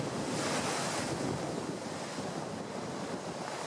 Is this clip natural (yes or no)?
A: yes